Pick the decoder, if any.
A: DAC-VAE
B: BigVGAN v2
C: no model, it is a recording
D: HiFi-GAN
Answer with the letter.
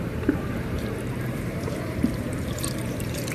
B